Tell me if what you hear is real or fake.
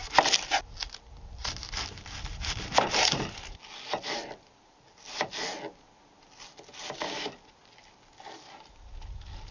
real